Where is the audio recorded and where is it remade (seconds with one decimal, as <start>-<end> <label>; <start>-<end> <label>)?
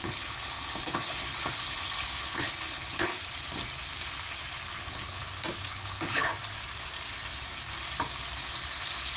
0.0-3.1 remade; 3.1-4.8 recorded; 4.8-5.2 remade; 5.2-5.7 recorded; 5.7-6.3 remade; 6.3-9.2 recorded